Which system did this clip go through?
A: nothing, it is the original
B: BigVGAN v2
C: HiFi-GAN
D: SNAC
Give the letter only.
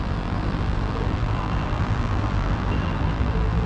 B